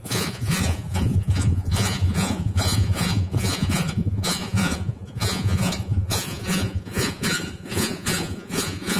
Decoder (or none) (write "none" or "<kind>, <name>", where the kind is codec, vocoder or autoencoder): vocoder, Vocos